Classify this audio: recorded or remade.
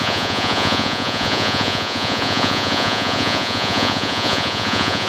remade